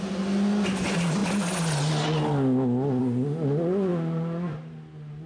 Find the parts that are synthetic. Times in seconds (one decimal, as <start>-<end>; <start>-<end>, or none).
none

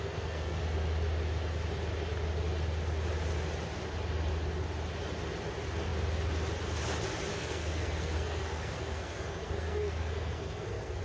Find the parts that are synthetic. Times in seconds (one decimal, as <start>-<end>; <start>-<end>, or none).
0.0-0.6; 7.3-11.0